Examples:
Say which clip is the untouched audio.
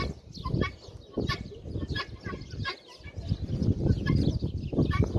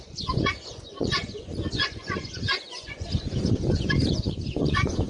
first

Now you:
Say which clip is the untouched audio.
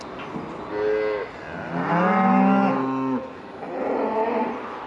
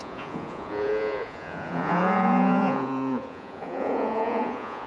first